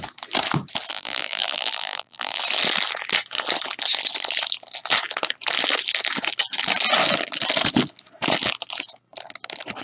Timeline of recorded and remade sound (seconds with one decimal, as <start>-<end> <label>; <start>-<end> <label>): 0.0-0.9 recorded; 0.9-2.4 remade; 2.4-9.8 recorded